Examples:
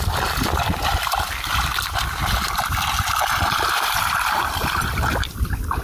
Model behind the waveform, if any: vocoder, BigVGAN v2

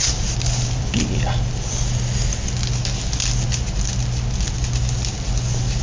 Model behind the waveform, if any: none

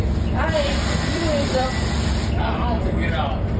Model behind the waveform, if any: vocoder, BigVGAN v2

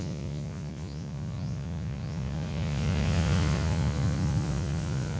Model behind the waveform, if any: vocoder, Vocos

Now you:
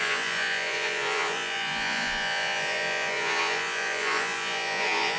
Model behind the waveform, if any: vocoder, Vocos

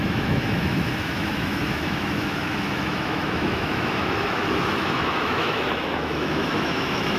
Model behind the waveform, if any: autoencoder, DAC-VAE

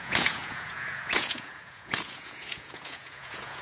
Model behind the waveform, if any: vocoder, Vocos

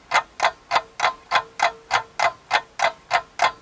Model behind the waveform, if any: none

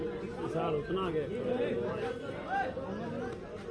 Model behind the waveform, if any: none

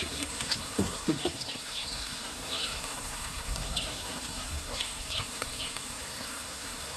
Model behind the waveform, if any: codec, SNAC